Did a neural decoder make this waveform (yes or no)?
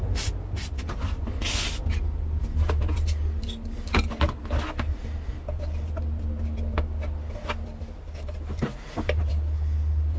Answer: no